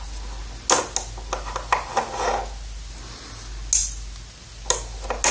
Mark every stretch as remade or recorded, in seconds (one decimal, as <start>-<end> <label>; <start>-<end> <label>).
0.0-5.3 recorded